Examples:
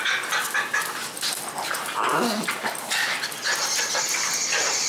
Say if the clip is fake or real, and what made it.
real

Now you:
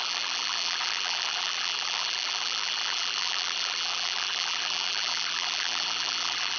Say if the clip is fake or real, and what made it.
fake, vocoder, BigVGAN v2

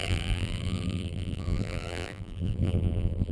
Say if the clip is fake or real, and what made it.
fake, vocoder, BigVGAN v2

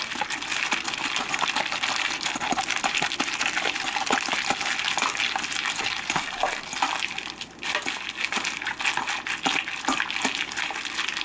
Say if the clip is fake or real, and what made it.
real